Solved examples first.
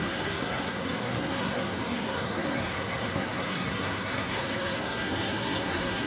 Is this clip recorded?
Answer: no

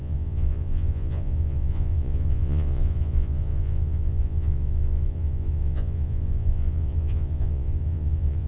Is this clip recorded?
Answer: no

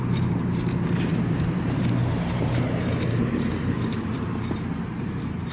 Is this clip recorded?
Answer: no